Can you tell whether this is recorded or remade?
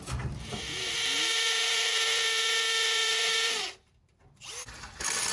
remade